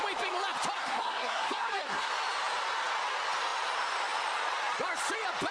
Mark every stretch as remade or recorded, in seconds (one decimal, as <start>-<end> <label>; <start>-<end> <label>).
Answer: 0.0-0.8 recorded; 0.8-2.1 remade; 2.1-5.5 recorded